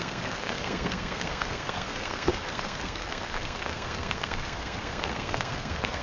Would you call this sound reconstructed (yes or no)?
yes